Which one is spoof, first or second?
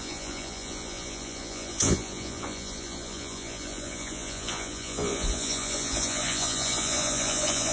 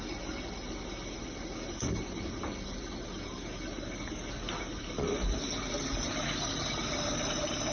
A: first